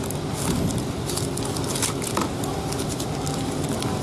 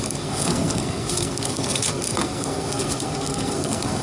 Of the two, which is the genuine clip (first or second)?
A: first